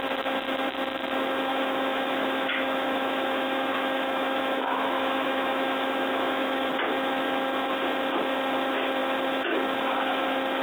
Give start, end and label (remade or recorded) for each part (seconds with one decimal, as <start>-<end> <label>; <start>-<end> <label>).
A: 0.0-1.5 recorded; 1.5-6.7 remade; 6.7-10.6 recorded